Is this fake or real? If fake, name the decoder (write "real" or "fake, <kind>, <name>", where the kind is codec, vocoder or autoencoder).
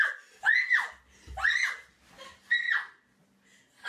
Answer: real